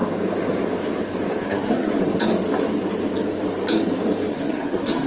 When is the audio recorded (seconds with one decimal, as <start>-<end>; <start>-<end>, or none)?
0.0-1.4; 1.9-4.3